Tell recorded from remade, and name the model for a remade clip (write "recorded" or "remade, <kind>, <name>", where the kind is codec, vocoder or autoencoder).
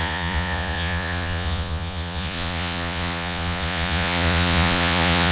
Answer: remade, vocoder, Vocos